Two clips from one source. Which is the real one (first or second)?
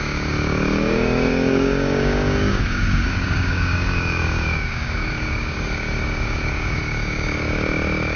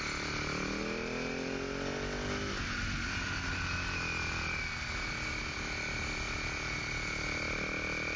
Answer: second